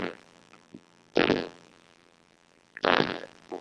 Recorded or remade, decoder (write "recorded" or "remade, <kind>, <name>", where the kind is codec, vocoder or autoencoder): remade, vocoder, BigVGAN v2